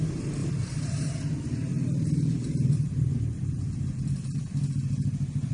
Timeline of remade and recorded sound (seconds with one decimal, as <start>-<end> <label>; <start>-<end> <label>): 0.0-0.4 recorded; 0.4-1.1 remade; 1.1-1.7 recorded; 1.7-3.1 remade; 3.1-5.5 recorded